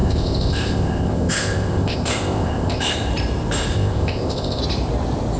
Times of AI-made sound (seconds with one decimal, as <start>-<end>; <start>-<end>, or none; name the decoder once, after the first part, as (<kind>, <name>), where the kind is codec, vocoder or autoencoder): 0.0-3.1 (codec, ZipCodec); 3.7-4.6